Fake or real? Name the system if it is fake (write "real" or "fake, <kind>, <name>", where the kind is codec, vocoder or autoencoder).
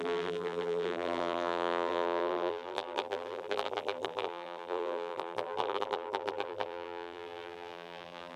fake, vocoder, BigVGAN v2